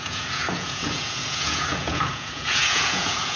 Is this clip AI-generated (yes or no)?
yes